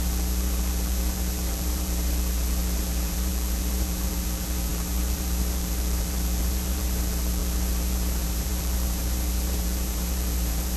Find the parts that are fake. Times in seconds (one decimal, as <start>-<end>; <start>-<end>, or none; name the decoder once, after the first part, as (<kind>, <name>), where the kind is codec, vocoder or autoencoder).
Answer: 0.0-10.8 (vocoder, BigVGAN v2)